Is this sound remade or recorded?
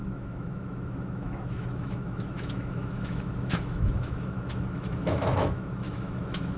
remade